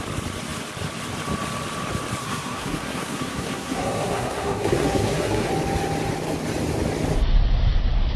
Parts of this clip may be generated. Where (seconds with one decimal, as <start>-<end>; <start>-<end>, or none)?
2.2-5.5